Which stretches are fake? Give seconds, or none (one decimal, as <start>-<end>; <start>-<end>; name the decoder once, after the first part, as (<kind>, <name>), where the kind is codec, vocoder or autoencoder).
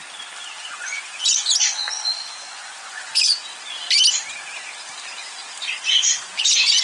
0.5-3.4 (vocoder, Vocos); 6.0-6.8